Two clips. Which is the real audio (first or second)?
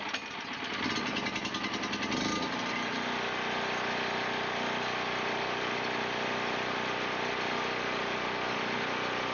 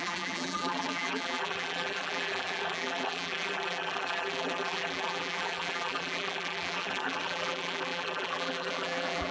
first